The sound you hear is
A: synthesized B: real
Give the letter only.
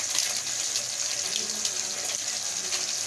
B